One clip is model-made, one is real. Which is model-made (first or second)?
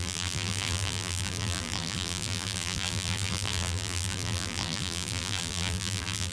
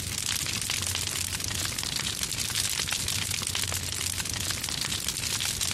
first